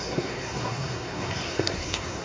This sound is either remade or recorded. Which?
remade